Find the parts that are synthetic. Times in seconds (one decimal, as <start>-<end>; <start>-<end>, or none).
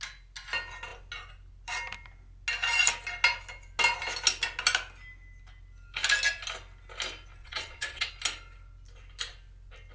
7.4-8.1